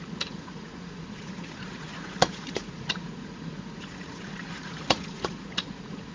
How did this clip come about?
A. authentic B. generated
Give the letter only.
B